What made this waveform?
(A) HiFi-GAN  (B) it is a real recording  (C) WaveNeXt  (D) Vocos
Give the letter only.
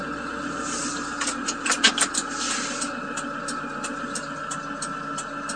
B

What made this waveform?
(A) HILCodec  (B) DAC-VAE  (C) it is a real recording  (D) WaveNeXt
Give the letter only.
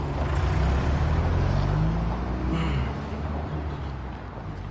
C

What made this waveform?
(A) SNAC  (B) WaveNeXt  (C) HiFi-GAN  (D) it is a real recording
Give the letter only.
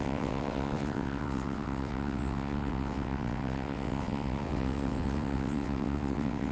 B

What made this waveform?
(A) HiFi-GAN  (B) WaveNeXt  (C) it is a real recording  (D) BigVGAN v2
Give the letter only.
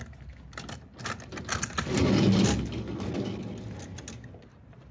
C